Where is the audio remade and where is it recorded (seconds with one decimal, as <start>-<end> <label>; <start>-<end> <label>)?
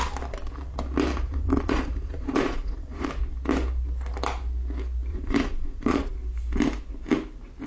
0.0-1.1 recorded; 1.1-3.1 remade; 3.1-5.1 recorded; 5.1-6.1 remade; 6.1-7.7 recorded